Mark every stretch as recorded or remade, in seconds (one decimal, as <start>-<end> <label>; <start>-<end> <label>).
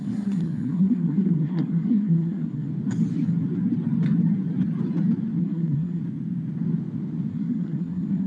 0.0-2.7 remade; 2.7-5.4 recorded; 5.4-6.0 remade; 6.0-7.3 recorded; 7.3-8.3 remade